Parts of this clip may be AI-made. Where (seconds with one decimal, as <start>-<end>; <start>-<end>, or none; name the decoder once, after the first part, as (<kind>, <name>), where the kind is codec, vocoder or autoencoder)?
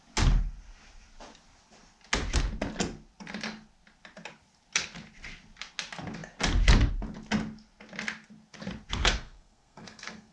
9.0-10.3 (codec, SNAC)